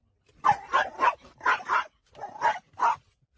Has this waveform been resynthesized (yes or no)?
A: no